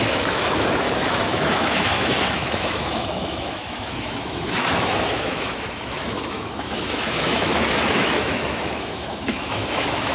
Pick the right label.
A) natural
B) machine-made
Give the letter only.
B